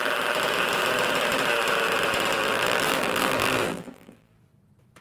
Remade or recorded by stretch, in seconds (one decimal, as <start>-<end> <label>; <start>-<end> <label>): 0.0-2.4 recorded; 2.4-4.4 remade; 4.4-5.0 recorded